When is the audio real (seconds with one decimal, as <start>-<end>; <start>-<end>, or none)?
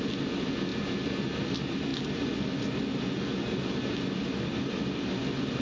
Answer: 0.0-5.6